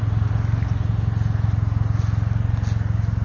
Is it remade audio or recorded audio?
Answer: recorded